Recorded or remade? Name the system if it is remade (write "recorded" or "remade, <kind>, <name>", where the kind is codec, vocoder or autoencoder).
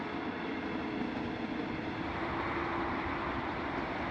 recorded